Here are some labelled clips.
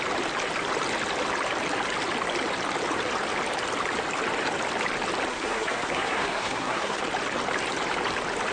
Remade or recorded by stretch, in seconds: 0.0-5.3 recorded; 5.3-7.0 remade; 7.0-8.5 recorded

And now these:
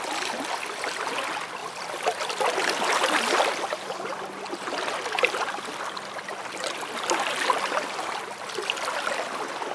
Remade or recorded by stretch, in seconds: 0.0-9.7 recorded